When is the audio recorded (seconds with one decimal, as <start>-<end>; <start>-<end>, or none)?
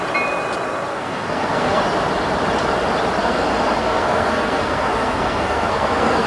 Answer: 0.0-0.9; 1.8-3.2